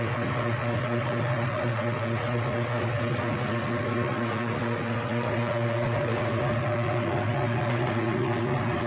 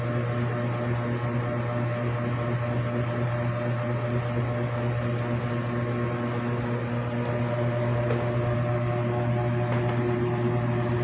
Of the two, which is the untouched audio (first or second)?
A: second